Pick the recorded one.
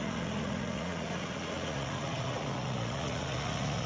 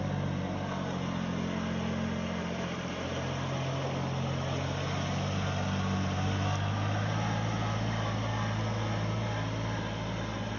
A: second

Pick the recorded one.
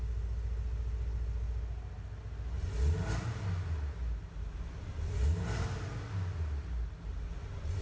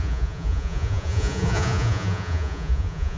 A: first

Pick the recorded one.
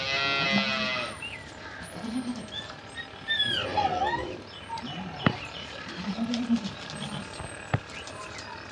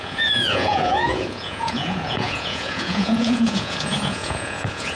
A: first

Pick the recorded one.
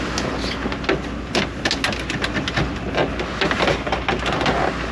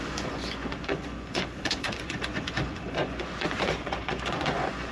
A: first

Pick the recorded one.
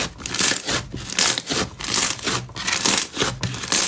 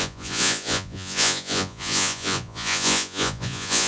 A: first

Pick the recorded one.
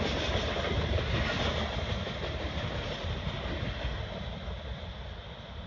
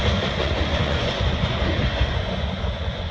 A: first